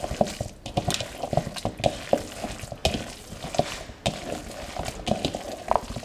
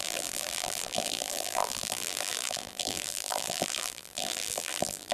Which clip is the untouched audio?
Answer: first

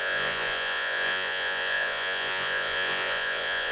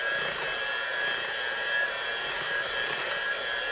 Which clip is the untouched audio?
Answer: second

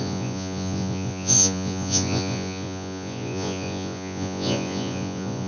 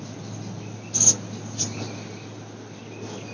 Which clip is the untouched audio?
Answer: second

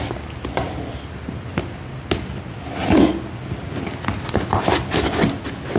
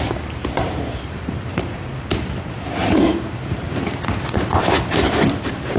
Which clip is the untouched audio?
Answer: first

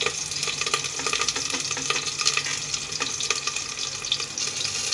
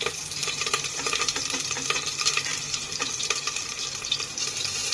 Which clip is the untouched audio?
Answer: first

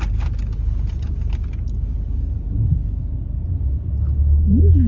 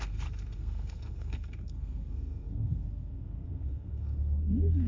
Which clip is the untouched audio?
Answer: first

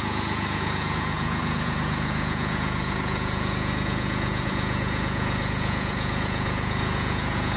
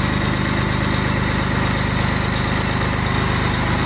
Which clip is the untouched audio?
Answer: second